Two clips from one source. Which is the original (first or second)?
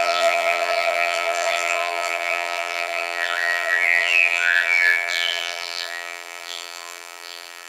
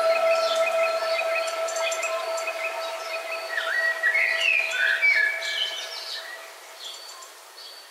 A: second